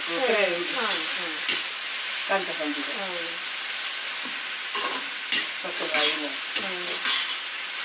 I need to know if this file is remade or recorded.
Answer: recorded